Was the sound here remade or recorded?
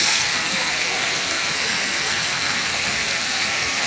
remade